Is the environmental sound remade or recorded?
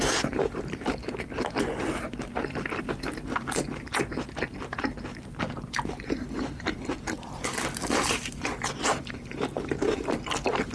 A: remade